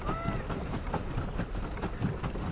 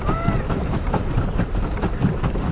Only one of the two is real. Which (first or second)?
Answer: first